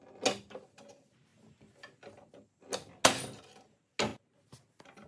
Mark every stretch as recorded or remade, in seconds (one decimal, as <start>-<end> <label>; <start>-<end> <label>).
0.0-5.1 recorded